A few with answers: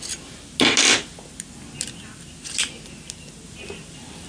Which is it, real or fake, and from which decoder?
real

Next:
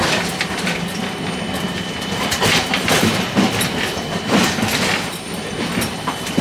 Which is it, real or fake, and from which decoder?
fake, vocoder, BigVGAN v2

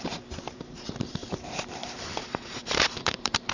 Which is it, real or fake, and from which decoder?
fake, vocoder, BigVGAN v2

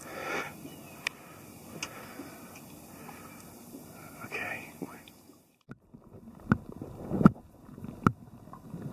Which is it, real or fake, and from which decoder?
real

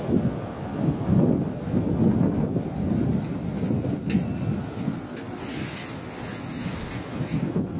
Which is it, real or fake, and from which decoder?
real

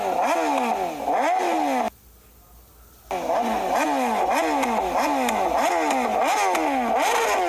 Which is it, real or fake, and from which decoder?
real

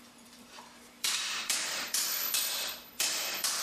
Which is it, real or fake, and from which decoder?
fake, vocoder, BigVGAN v2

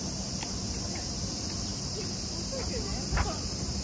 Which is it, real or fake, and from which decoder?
real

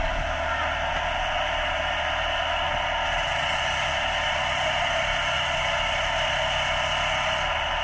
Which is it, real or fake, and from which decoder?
real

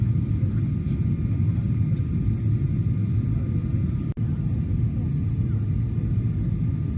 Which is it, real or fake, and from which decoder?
real